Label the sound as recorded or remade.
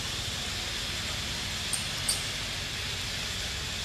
recorded